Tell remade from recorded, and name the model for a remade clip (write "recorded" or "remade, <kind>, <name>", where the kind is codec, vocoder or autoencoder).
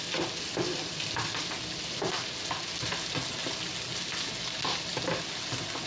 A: recorded